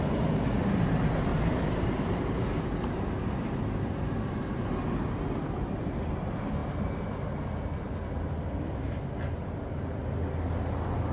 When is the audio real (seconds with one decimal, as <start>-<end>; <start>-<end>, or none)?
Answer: 0.0-1.3; 2.6-11.1